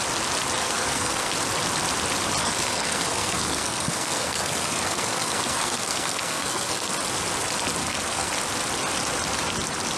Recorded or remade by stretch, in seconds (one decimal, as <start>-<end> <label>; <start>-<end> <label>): 0.0-0.6 recorded; 0.6-1.3 remade; 1.3-2.4 recorded; 2.4-6.9 remade; 6.9-7.8 recorded; 7.8-8.3 remade; 8.3-10.0 recorded